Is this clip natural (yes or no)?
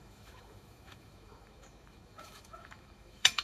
no